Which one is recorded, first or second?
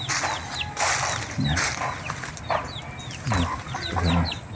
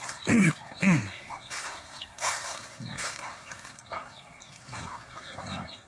first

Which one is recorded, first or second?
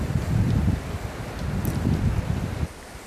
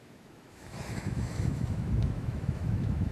first